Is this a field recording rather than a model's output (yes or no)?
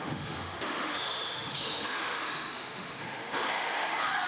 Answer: no